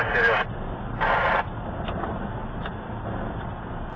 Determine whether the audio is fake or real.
real